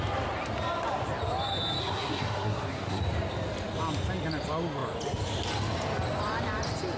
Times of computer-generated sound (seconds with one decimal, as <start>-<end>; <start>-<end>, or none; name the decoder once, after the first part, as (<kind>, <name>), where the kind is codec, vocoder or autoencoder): 1.8-3.0 (codec, SNAC)